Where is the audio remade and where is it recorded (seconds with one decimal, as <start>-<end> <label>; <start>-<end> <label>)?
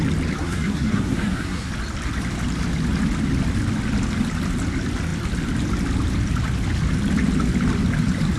0.0-0.4 recorded; 0.4-1.7 remade; 1.7-8.4 recorded